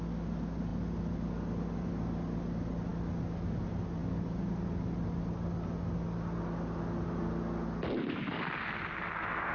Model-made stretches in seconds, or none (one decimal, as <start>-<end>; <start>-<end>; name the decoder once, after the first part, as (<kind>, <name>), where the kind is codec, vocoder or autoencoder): none